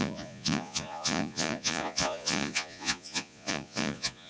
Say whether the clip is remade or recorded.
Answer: remade